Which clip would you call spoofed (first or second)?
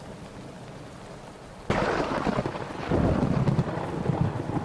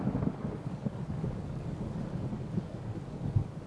second